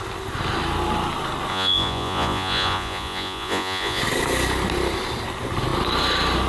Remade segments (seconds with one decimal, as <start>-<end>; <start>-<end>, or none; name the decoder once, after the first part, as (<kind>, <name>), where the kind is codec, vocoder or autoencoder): 1.5-4.0 (vocoder, Vocos)